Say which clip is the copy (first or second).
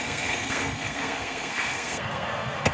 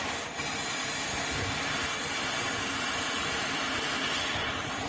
first